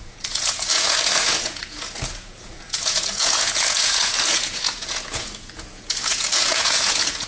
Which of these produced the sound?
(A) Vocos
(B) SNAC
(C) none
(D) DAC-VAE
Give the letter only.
A